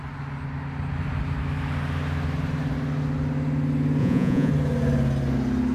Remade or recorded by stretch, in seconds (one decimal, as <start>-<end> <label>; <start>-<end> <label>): 0.0-4.0 recorded; 4.0-4.5 remade; 4.5-5.7 recorded